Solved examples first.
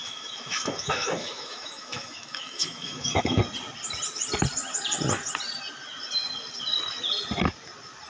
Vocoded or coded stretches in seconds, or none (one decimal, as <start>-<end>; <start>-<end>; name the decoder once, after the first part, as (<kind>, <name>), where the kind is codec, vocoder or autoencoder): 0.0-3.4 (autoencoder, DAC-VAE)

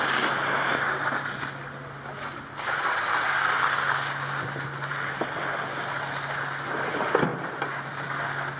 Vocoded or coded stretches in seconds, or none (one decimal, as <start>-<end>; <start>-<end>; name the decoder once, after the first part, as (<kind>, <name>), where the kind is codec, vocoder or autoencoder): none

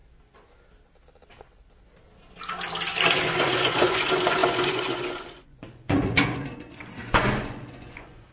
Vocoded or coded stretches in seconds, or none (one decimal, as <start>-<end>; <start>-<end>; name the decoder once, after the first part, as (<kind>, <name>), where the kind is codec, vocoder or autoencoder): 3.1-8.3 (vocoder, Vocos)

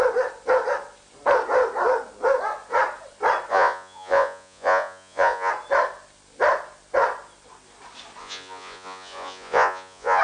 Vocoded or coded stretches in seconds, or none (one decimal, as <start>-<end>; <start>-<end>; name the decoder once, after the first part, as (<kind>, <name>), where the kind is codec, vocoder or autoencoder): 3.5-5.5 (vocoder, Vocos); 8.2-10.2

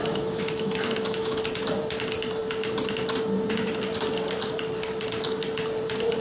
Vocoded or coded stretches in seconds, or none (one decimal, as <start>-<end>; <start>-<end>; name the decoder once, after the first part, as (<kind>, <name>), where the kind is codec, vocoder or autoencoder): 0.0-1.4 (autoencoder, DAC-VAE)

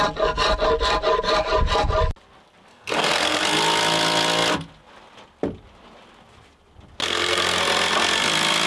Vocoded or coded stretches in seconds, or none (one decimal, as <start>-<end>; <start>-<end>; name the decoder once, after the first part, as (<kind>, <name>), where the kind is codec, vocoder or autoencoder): 2.7-3.4 (codec, SNAC); 7.0-7.6